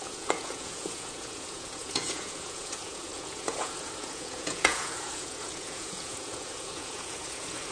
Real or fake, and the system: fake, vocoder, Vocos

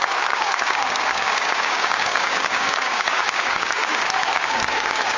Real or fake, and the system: fake, codec, DAC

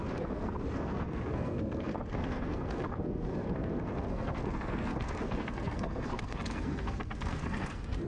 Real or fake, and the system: fake, codec, SNAC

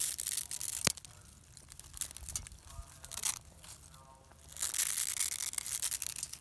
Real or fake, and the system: real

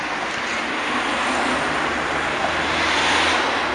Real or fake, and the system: real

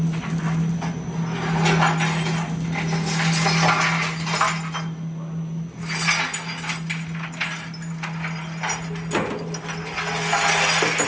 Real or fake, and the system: real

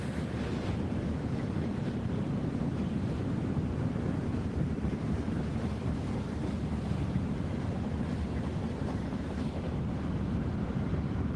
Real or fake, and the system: fake, vocoder, BigVGAN v2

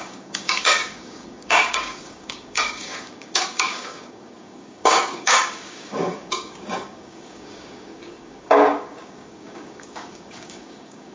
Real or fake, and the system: fake, codec, DAC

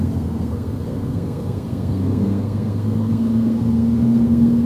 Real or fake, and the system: fake, codec, SNAC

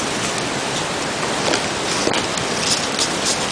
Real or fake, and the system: real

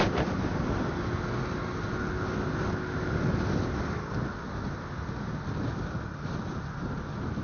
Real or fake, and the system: real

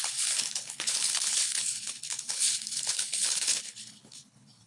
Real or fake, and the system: fake, codec, HILCodec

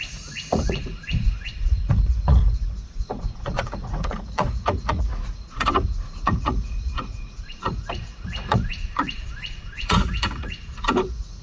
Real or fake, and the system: fake, vocoder, Vocos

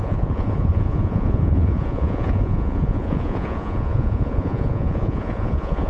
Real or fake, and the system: fake, vocoder, Vocos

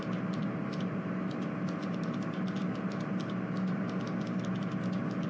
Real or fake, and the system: real